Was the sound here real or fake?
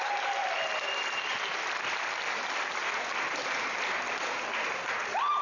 real